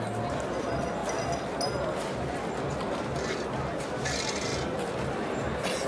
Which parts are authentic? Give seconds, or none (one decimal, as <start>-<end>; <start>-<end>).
0.0-5.9